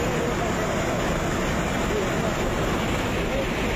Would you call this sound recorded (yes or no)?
yes